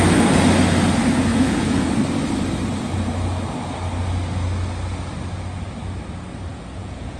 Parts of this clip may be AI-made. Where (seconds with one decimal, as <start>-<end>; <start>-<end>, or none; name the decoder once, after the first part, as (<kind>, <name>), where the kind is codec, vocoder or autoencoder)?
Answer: 1.3-1.9 (vocoder, Vocos); 6.5-7.2